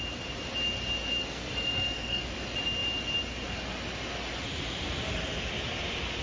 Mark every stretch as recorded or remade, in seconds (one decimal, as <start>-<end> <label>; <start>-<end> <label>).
0.0-1.2 recorded; 1.2-2.2 remade; 2.2-6.2 recorded